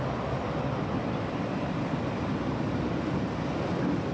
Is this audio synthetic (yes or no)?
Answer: no